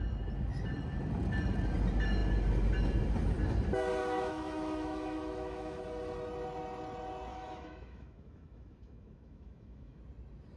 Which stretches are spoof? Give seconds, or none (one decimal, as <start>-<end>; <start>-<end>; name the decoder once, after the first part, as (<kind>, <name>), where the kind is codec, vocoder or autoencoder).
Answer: 4.0-5.8 (autoencoder, DAC-VAE); 7.3-10.0